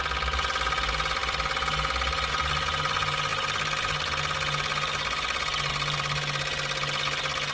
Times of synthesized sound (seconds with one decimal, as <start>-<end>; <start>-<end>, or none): none

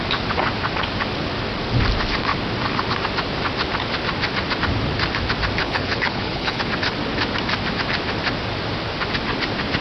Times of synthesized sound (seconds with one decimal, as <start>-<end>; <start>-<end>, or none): 5.6-6.6

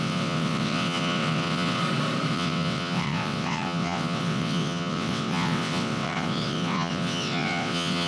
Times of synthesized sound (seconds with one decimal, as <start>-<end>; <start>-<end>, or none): 0.0-1.8; 2.3-8.1

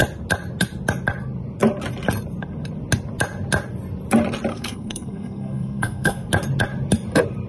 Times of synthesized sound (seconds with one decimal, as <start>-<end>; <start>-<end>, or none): 4.5-6.3